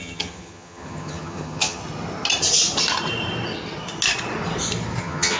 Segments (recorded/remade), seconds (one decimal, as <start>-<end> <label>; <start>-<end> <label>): 0.0-1.8 remade; 1.8-5.0 recorded; 5.0-5.4 remade